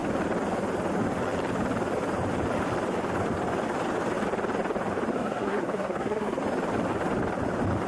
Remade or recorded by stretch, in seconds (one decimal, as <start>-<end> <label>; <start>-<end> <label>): 0.0-5.1 recorded; 5.1-6.4 remade; 6.4-7.9 recorded